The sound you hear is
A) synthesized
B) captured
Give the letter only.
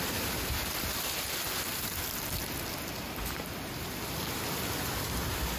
B